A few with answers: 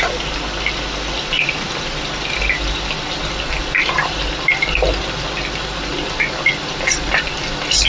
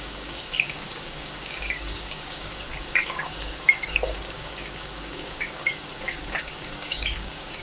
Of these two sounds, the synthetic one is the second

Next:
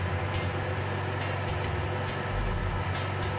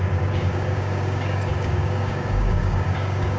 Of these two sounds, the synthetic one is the second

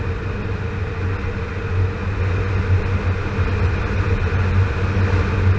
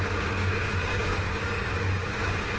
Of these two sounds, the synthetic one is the second